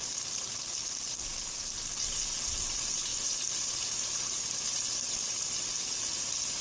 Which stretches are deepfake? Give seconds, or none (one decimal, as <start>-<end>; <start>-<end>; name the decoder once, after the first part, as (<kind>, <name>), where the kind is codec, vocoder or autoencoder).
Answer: 0.0-6.6 (vocoder, BigVGAN v2)